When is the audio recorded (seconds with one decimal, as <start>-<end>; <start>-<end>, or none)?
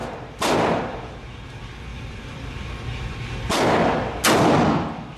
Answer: 0.0-1.9; 2.5-5.2